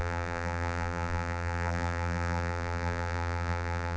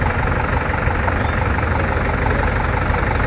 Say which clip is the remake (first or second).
first